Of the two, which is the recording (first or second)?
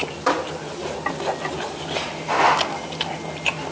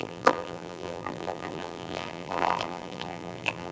first